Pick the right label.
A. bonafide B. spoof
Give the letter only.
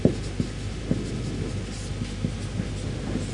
A